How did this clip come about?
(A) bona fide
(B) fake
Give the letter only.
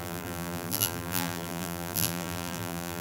B